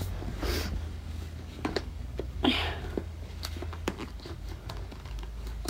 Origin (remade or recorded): remade